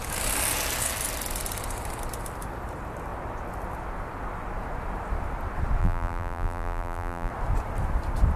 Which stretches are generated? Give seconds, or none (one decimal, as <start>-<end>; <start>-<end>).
5.8-7.3